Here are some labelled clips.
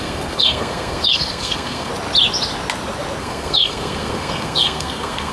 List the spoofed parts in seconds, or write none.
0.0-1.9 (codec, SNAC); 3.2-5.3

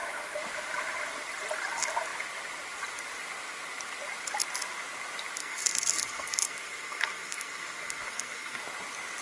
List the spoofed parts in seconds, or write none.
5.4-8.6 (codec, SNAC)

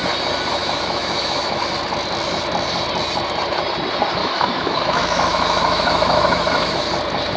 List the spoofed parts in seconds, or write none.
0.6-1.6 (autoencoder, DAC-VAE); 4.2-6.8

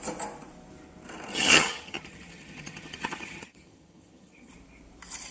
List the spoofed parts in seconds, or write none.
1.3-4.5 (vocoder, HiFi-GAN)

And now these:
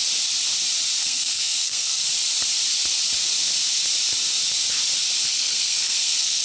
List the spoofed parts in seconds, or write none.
1.0-2.0 (codec, SNAC); 5.3-6.4

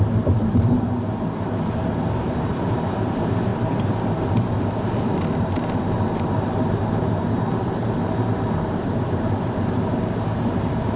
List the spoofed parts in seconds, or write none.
0.0-11.0 (vocoder, BigVGAN v2)

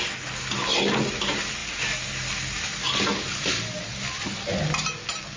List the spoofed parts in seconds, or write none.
none